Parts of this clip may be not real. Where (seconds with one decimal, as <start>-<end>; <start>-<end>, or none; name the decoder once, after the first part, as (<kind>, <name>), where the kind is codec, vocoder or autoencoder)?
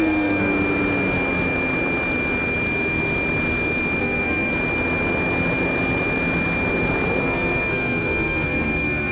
0.0-0.5 (codec, SNAC); 4.0-4.5; 7.2-9.1